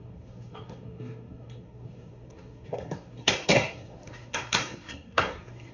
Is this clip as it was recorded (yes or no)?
no